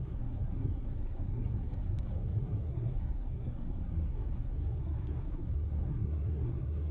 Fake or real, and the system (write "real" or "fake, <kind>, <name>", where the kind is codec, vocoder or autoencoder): fake, codec, SNAC